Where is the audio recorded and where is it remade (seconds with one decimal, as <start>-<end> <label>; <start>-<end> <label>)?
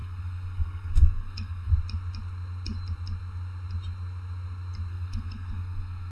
0.0-1.7 remade; 1.7-4.9 recorded; 4.9-6.1 remade